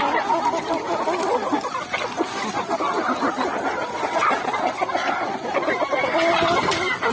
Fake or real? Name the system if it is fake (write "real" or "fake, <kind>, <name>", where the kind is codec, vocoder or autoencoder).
real